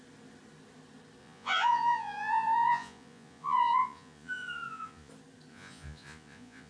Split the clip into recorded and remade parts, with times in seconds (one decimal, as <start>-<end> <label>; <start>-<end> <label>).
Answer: 0.0-1.2 recorded; 1.2-5.1 remade; 5.1-5.5 recorded; 5.5-6.7 remade